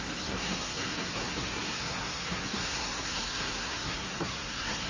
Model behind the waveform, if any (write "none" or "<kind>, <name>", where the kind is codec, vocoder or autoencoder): codec, SNAC